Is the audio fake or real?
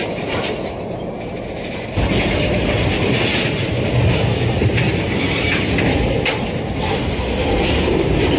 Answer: real